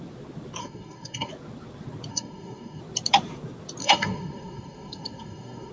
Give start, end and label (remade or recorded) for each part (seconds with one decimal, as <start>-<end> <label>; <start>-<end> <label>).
0.0-0.6 recorded; 0.6-1.3 remade; 1.3-2.1 recorded; 2.1-2.8 remade; 2.8-3.8 recorded; 3.8-5.7 remade